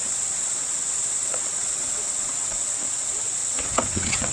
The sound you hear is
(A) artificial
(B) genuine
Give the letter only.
A